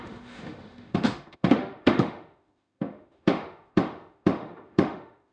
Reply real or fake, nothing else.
fake